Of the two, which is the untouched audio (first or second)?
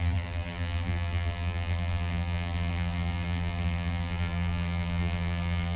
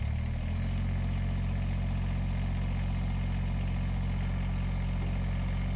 second